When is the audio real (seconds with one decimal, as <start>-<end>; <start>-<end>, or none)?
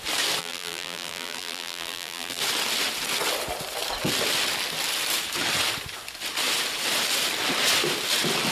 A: 0.0-0.4; 2.4-8.5